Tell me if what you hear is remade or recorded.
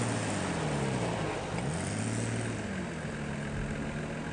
recorded